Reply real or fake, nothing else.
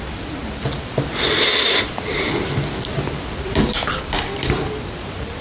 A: real